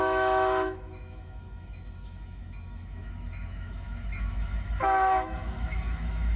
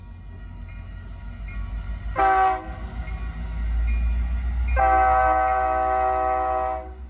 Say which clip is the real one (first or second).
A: second